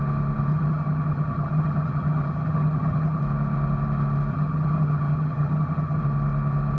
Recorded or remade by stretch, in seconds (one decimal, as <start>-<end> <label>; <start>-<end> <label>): 0.0-0.5 recorded; 0.5-3.2 remade; 3.2-4.3 recorded; 4.3-6.0 remade; 6.0-6.8 recorded